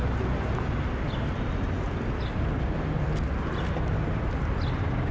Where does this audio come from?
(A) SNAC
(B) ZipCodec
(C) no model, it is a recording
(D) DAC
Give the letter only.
C